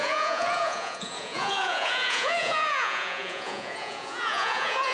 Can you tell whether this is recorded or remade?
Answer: remade